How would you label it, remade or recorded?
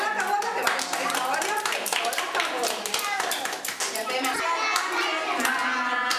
recorded